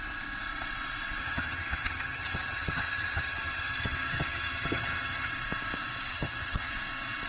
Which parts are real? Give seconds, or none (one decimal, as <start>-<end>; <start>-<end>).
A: 0.0-1.2; 5.3-6.1; 6.7-7.3

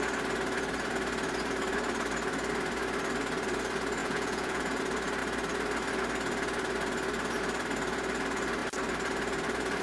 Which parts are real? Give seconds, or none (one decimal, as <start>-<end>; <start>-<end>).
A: 0.0-4.0; 4.8-9.8